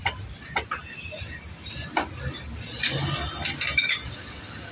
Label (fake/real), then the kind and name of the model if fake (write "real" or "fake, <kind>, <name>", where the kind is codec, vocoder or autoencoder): real